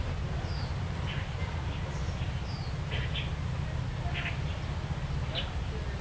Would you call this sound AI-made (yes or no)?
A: no